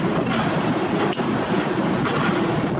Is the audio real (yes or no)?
yes